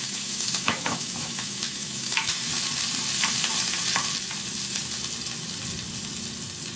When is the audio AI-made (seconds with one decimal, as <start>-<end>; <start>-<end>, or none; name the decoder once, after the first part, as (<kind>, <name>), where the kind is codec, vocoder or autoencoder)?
0.0-2.5 (autoencoder, DAC-VAE)